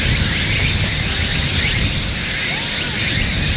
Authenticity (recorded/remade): recorded